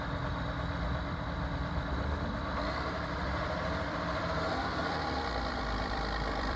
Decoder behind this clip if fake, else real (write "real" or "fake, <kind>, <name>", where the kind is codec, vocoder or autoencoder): fake, vocoder, BigVGAN v2